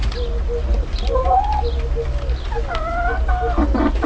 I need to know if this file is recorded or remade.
recorded